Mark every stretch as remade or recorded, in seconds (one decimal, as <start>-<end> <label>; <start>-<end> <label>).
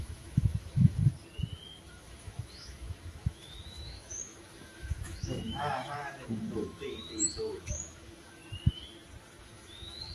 0.0-1.1 remade; 1.1-1.9 recorded; 1.9-8.4 remade; 8.4-9.4 recorded; 9.4-10.1 remade